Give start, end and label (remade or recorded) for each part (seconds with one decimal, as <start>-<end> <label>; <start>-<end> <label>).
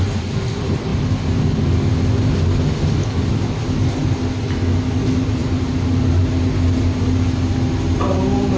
0.0-8.6 recorded